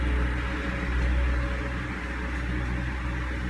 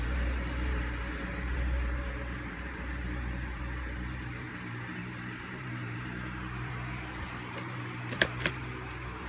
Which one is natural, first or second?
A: first